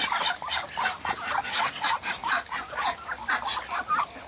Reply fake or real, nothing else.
real